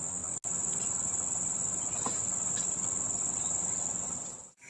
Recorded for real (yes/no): yes